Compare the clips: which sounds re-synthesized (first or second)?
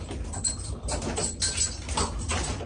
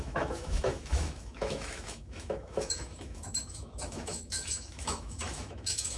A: second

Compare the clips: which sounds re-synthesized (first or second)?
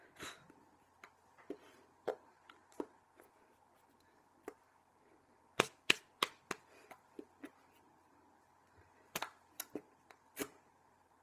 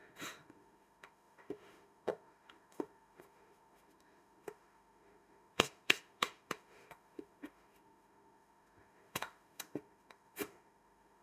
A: second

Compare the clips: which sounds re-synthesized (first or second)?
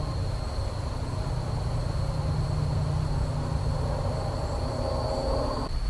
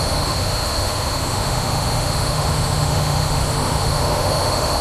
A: second